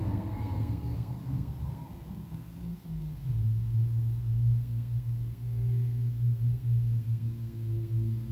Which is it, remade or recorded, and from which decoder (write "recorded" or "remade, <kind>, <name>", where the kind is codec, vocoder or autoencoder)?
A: remade, codec, SNAC